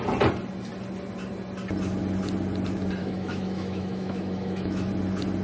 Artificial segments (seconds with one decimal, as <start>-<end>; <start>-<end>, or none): 3.0-4.9